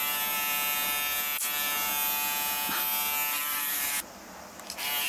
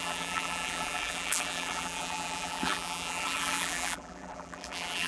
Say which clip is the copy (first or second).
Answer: second